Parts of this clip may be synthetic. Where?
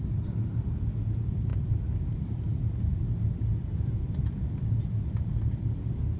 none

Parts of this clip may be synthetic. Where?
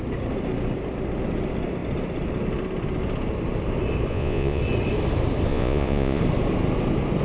4.1-4.6 (vocoder, Vocos); 5.5-6.2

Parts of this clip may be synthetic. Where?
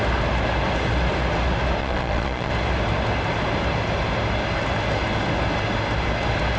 1.8-2.5 (vocoder, Vocos)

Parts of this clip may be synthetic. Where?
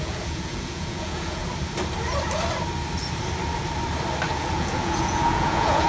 0.0-1.4 (vocoder, Vocos); 4.3-5.9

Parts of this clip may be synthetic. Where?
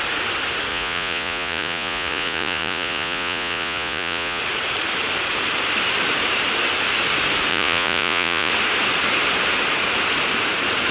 0.7-4.4 (vocoder, Vocos); 7.5-8.5